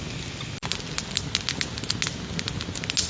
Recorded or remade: recorded